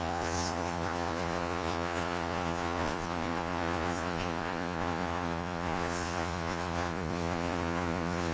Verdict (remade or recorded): remade